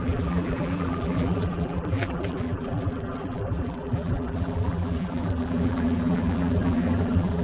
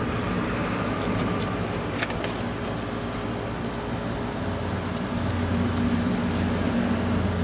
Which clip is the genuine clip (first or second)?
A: second